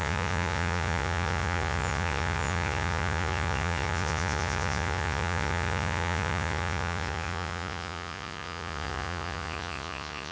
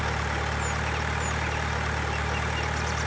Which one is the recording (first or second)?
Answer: second